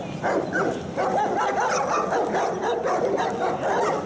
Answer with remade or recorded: recorded